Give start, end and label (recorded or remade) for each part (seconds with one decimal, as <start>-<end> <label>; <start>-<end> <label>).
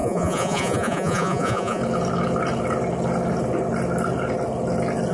0.0-1.8 remade; 1.8-5.1 recorded